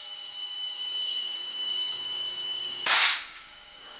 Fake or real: fake